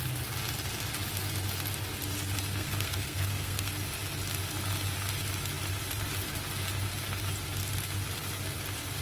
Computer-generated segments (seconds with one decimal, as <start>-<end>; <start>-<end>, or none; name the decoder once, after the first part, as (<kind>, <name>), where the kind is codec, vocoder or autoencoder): 2.5-3.7 (codec, SNAC)